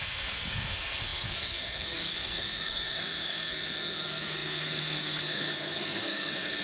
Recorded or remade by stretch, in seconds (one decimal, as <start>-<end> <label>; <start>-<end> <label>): 0.0-6.6 remade

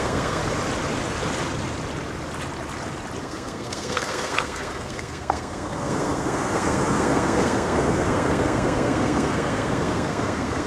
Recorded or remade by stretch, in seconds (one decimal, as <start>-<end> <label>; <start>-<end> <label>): 0.0-0.4 remade; 0.4-3.2 recorded; 3.2-10.7 remade

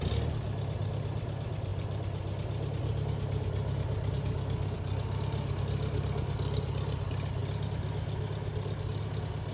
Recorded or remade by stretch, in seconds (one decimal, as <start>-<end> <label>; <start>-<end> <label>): 0.0-9.5 recorded

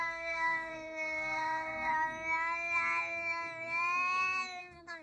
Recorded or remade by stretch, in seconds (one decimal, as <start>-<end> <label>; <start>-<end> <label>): 0.0-1.9 remade; 1.9-4.6 recorded; 4.6-5.0 remade